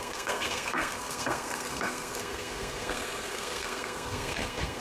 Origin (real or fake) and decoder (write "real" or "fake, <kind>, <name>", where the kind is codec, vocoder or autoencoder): fake, codec, SNAC